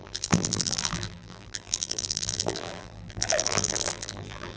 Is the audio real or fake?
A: fake